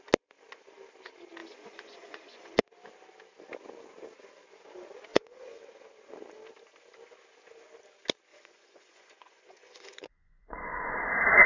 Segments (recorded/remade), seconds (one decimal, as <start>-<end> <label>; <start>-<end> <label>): 0.0-1.4 recorded; 1.4-2.6 remade; 2.6-5.1 recorded; 5.1-5.6 remade; 5.6-8.3 recorded; 8.3-11.1 remade; 11.1-11.5 recorded